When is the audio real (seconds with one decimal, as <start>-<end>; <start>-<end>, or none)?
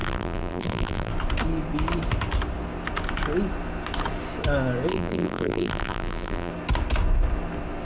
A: 1.1-4.9; 6.5-7.8